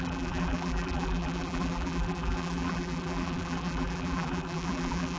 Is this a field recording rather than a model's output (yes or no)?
no